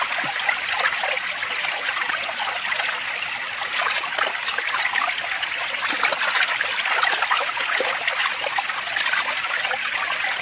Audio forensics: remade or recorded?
recorded